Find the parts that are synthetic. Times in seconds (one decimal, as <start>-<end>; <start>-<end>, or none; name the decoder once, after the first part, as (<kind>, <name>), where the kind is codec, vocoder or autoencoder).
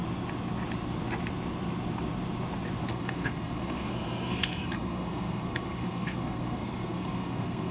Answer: 2.9-7.7 (codec, SNAC)